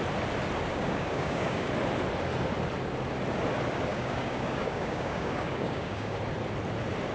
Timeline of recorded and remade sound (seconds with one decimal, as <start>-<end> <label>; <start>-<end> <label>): 0.0-0.7 recorded; 0.7-1.7 remade; 1.7-3.9 recorded; 3.9-6.2 remade; 6.2-7.1 recorded